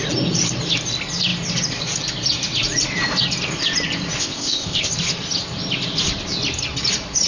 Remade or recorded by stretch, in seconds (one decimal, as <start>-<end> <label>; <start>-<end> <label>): 0.0-4.2 recorded; 4.2-4.9 remade; 4.9-7.3 recorded